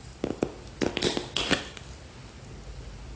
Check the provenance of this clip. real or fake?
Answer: real